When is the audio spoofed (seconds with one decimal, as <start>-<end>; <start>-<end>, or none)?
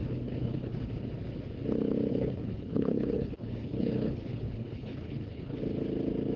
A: 0.0-0.9; 2.1-5.6